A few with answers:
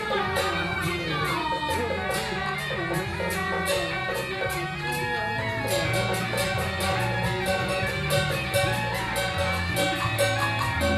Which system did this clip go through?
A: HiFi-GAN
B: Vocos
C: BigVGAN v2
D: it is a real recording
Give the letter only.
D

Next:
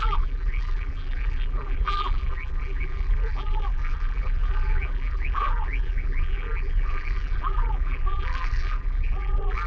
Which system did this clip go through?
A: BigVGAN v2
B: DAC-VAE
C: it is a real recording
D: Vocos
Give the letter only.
A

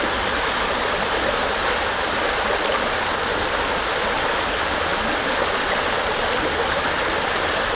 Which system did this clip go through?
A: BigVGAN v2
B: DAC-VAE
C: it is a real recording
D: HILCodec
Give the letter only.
C